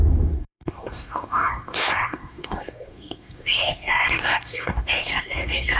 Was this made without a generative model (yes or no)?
no